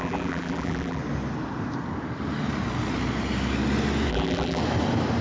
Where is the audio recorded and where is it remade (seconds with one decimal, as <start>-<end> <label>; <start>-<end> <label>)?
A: 0.0-1.0 remade; 1.0-4.1 recorded; 4.1-4.6 remade; 4.6-5.2 recorded